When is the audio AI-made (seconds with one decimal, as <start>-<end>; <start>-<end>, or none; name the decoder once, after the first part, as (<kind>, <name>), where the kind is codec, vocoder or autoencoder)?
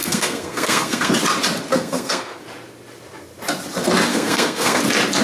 0.0-1.1 (codec, SNAC); 1.7-2.4; 4.1-4.8